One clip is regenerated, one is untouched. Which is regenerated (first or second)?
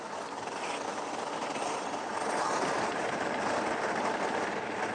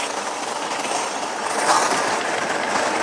second